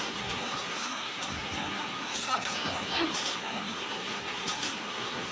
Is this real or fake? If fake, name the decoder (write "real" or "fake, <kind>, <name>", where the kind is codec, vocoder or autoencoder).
fake, codec, SNAC